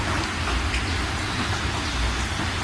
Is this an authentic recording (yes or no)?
yes